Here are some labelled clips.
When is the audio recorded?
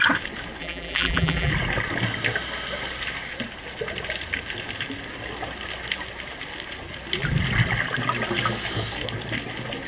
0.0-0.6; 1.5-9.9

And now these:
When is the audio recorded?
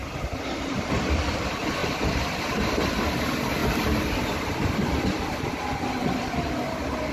0.9-7.1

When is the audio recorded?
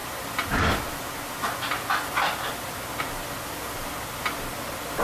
0.0-5.0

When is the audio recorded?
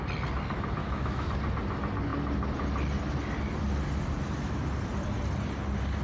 0.0-0.8; 1.3-6.0